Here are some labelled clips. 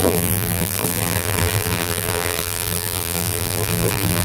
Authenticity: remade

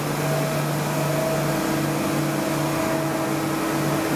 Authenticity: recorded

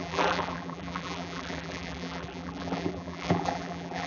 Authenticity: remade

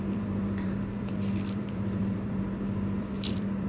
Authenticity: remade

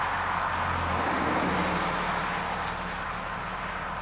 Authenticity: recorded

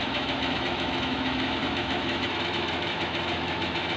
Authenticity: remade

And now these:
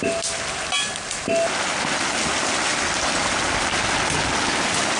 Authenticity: recorded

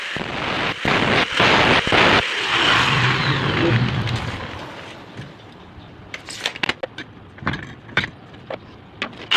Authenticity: recorded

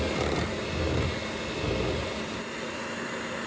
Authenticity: recorded